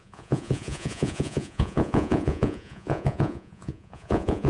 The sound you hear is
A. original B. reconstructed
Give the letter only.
B